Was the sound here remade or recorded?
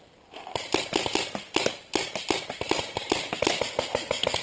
recorded